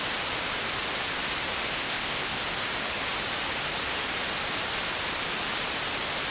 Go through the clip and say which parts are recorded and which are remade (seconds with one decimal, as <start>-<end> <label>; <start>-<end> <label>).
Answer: 0.0-1.8 recorded; 1.8-2.4 remade; 2.4-6.3 recorded